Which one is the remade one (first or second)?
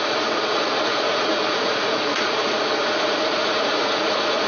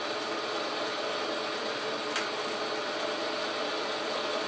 first